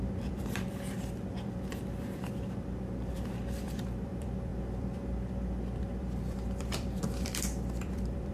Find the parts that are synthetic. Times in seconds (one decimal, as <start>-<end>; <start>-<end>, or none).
0.0-8.3